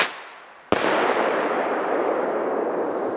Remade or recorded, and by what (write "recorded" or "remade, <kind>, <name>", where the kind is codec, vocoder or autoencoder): recorded